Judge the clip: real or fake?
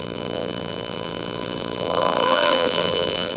fake